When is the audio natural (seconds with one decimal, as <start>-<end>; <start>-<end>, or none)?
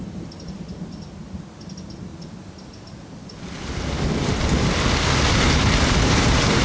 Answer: 0.0-6.6